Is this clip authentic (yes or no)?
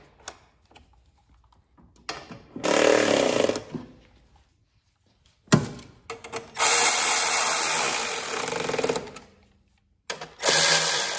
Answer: yes